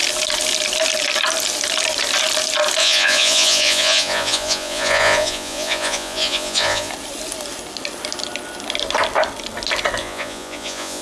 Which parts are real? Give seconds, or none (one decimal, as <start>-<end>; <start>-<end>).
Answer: 0.0-2.8; 6.9-10.0